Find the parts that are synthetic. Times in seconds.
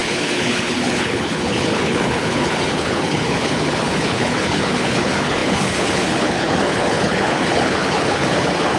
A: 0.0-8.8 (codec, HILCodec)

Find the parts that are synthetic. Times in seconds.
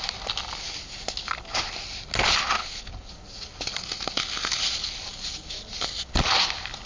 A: 2.6-3.1 (codec, HILCodec)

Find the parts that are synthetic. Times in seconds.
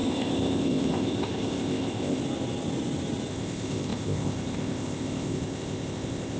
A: 0.0-2.2 (codec, ZipCodec); 3.3-6.4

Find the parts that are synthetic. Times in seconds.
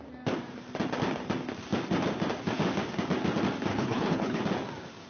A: 3.7-4.4 (codec, HILCodec)